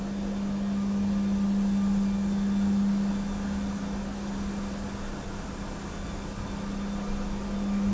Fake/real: real